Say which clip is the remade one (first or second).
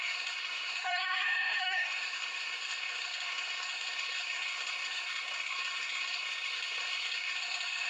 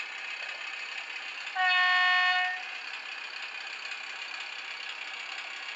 first